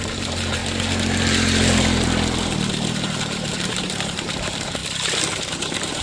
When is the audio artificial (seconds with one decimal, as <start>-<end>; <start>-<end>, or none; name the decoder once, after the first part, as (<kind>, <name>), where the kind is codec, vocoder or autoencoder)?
0.0-0.6 (vocoder, BigVGAN v2); 2.9-4.8; 5.4-6.0